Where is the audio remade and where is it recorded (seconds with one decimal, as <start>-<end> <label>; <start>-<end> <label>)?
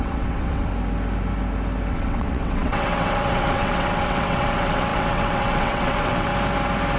0.0-0.7 remade; 0.7-1.9 recorded; 1.9-6.3 remade; 6.3-7.0 recorded